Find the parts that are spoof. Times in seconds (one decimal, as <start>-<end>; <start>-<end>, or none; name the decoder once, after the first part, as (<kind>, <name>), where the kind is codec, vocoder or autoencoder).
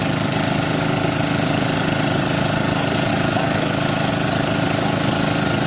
3.1-4.1 (autoencoder, DAC-VAE)